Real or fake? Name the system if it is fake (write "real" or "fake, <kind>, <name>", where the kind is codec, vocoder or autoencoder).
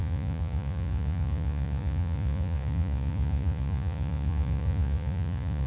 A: fake, vocoder, Vocos